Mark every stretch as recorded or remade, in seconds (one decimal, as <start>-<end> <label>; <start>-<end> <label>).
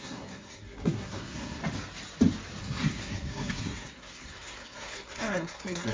0.0-1.6 remade; 1.6-2.6 recorded; 2.6-5.9 remade